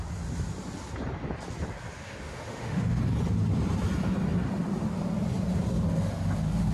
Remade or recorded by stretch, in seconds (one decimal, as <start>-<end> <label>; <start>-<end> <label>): 0.0-2.0 recorded; 2.0-3.0 remade; 3.0-6.7 recorded